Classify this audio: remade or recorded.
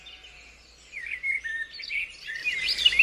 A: recorded